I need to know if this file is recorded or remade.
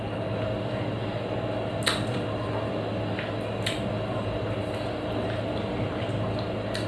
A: recorded